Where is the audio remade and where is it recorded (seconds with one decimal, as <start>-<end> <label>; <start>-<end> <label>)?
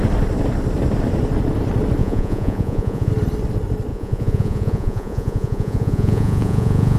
0.0-2.0 recorded; 2.0-3.1 remade; 3.1-3.9 recorded; 3.9-7.0 remade